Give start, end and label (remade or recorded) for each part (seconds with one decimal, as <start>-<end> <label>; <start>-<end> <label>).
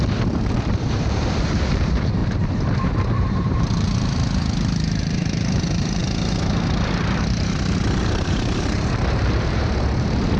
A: 0.0-2.2 remade; 2.2-3.2 recorded; 3.2-10.4 remade